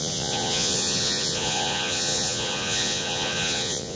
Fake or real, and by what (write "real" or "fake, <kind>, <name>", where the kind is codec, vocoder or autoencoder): fake, vocoder, Vocos